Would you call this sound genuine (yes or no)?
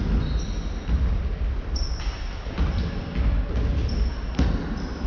yes